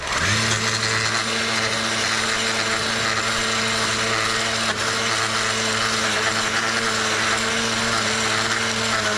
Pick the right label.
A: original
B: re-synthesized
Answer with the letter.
A